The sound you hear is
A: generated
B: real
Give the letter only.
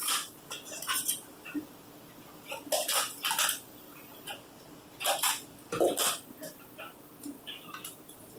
B